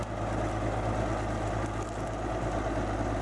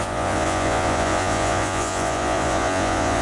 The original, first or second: first